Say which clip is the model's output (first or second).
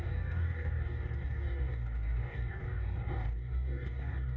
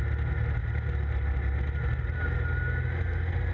first